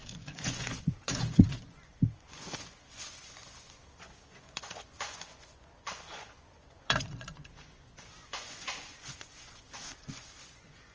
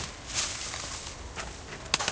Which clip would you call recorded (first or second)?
second